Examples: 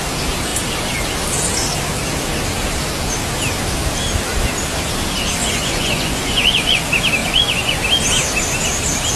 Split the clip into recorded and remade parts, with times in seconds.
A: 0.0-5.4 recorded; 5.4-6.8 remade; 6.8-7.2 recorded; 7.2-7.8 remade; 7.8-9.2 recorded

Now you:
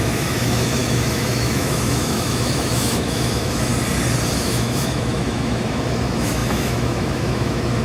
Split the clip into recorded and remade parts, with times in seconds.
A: 0.0-3.7 remade; 3.7-4.4 recorded; 4.4-7.8 remade

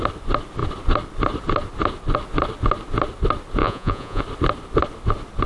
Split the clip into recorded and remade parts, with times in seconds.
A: 0.0-3.6 recorded; 3.6-4.2 remade; 4.2-5.5 recorded

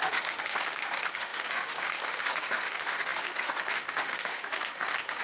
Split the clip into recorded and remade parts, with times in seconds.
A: 0.0-5.2 remade

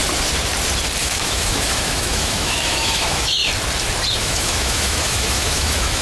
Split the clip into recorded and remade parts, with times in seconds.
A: 0.0-1.0 recorded; 1.0-3.4 remade; 3.4-4.2 recorded; 4.2-6.0 remade